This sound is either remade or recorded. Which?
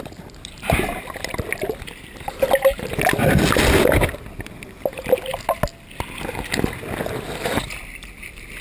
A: recorded